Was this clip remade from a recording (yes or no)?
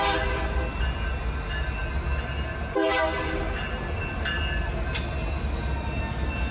no